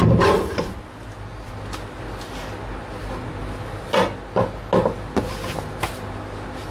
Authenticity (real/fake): real